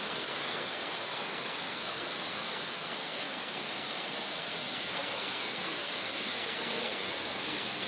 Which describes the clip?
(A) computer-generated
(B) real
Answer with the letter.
A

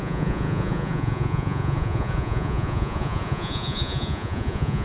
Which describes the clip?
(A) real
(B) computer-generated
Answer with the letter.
B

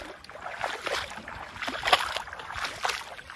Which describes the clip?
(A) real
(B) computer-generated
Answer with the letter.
A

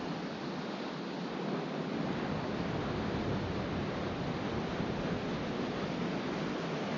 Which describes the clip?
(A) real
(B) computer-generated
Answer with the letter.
A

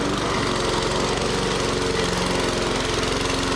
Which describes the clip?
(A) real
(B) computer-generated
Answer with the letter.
A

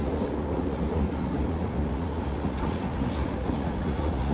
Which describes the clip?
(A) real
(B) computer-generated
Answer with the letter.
B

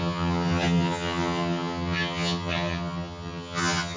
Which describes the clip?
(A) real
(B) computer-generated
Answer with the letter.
B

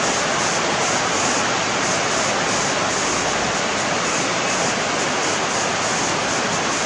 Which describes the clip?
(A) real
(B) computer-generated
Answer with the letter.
A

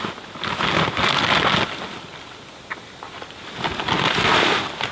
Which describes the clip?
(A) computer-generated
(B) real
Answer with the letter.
B